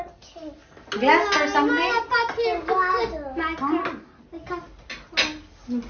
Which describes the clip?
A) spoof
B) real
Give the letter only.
B